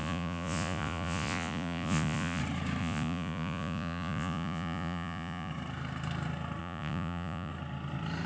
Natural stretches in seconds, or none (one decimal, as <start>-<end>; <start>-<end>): 2.4-2.8; 5.5-6.6; 7.5-8.3